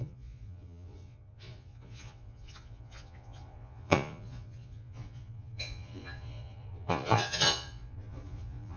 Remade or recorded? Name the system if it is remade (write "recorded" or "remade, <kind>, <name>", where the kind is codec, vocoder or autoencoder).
remade, vocoder, Vocos